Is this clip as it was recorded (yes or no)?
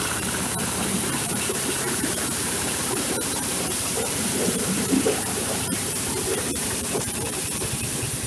no